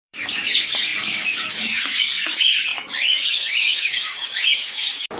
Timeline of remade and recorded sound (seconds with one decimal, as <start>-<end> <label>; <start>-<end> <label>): 0.0-5.2 remade